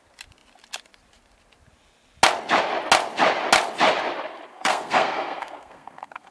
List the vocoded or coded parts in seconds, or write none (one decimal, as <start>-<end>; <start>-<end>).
4.5-6.3